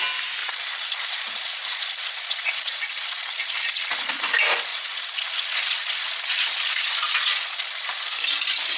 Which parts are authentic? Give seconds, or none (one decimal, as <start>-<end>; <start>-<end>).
0.0-0.4; 4.1-4.7; 7.9-8.8